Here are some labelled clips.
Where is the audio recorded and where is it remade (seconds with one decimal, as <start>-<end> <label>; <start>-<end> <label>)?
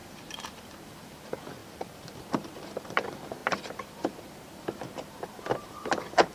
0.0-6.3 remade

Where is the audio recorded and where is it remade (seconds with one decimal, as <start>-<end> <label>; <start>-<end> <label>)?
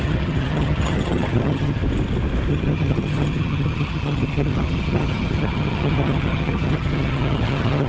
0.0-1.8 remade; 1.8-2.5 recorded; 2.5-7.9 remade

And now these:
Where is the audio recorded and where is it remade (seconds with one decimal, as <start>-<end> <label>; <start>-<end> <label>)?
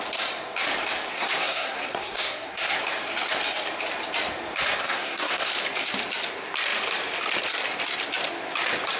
0.0-1.1 recorded; 1.1-2.8 remade; 2.8-4.8 recorded; 4.8-5.5 remade; 5.5-9.0 recorded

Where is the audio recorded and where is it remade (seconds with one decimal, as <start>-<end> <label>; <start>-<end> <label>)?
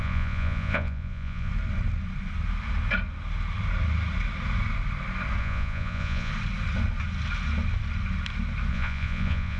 0.0-1.5 remade; 1.5-5.4 recorded; 5.4-6.3 remade; 6.3-8.7 recorded; 8.7-9.6 remade